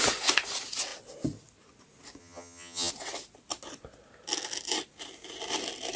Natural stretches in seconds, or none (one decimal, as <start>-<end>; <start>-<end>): 0.0-2.2; 2.9-6.0